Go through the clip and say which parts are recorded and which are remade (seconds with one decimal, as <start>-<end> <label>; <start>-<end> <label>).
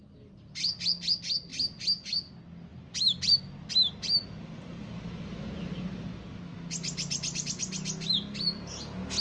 0.0-9.2 recorded